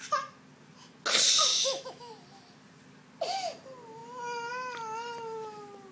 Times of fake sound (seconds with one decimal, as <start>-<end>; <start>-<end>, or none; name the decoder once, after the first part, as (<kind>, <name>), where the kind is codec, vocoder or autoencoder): 1.5-2.1 (autoencoder, DAC-VAE)